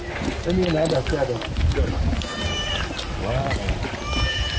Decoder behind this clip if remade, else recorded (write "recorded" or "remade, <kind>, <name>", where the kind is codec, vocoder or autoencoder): recorded